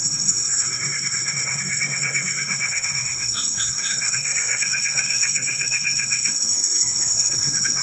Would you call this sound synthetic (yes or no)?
yes